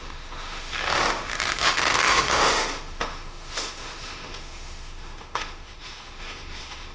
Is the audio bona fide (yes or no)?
no